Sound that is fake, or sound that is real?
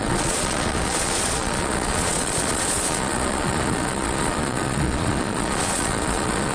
fake